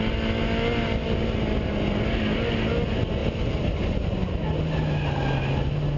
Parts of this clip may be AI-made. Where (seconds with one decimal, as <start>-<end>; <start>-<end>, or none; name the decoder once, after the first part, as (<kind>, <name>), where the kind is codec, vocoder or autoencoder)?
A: none